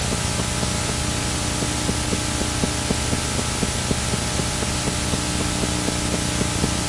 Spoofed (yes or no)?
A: no